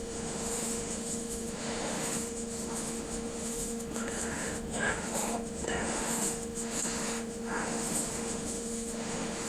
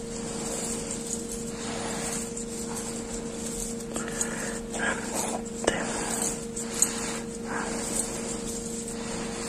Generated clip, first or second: first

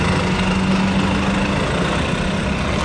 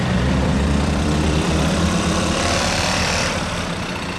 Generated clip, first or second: second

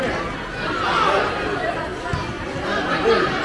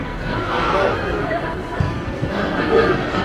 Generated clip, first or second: second